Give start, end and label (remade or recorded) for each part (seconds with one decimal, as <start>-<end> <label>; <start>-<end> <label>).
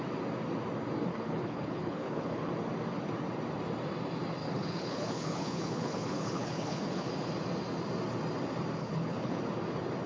0.0-1.1 recorded; 1.1-2.5 remade; 2.5-4.4 recorded; 4.4-7.1 remade; 7.1-8.8 recorded; 8.8-9.4 remade; 9.4-10.1 recorded